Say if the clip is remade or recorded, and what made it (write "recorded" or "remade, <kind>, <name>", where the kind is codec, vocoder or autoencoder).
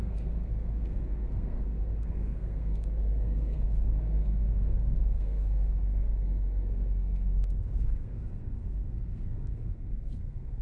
remade, codec, SNAC